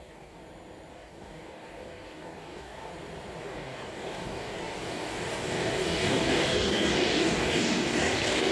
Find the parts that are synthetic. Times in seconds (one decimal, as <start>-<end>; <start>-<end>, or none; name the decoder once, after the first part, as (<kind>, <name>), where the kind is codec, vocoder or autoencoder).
0.0-0.4 (codec, DAC); 0.9-2.9; 3.4-8.5